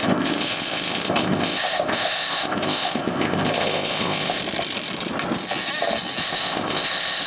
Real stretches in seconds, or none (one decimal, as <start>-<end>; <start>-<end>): 4.4-6.2